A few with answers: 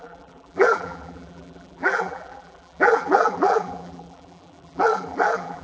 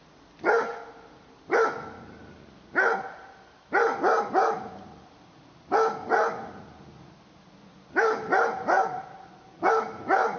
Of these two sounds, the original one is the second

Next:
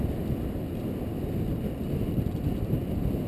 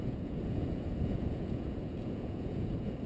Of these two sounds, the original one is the first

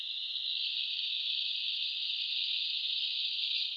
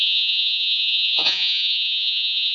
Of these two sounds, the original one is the first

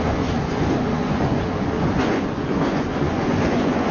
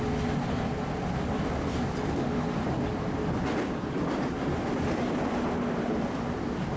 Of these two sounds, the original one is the second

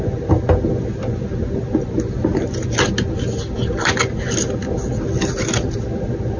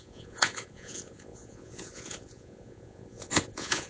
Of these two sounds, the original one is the first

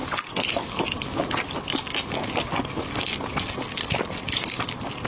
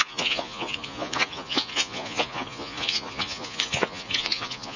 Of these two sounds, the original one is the first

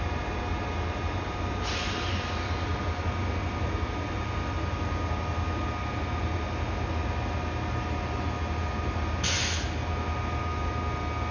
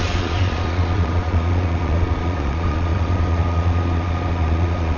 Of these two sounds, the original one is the first